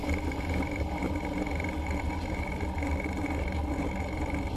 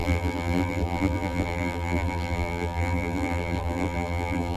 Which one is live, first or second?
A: first